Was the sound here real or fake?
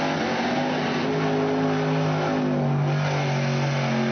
real